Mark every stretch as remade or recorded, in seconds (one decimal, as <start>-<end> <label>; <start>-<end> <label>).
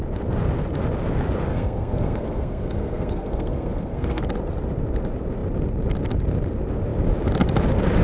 0.0-1.5 recorded; 1.5-4.2 remade; 4.2-8.0 recorded